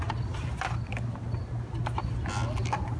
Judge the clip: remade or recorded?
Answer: recorded